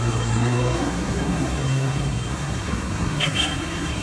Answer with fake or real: fake